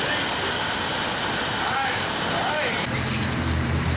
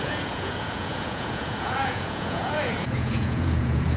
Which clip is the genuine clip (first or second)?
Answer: first